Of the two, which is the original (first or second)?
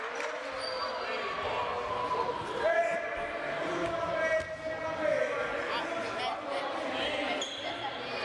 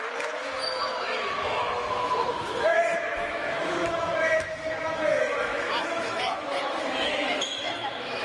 first